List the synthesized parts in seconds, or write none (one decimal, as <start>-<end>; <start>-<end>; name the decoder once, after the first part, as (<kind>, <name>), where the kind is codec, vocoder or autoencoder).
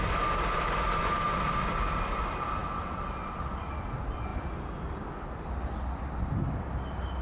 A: none